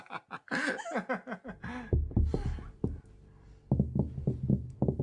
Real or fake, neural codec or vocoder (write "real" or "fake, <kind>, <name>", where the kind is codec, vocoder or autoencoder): real